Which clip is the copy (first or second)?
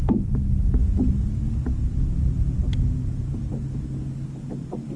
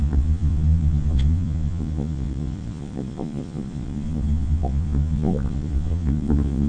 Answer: second